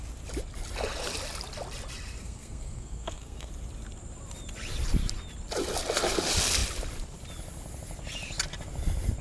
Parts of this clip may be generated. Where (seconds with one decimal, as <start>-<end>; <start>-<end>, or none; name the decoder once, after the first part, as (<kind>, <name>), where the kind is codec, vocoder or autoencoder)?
2.2-3.5 (codec, SNAC)